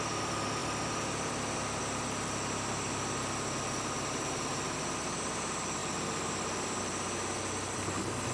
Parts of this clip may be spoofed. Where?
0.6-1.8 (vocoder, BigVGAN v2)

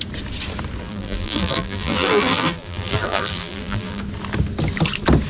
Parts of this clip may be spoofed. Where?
0.8-4.0 (vocoder, BigVGAN v2)

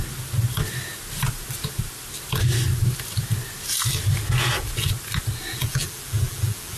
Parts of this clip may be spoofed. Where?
5.6-6.8 (vocoder, BigVGAN v2)

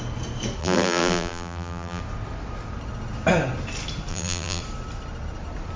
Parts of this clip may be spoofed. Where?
0.6-2.0 (vocoder, BigVGAN v2); 4.1-4.6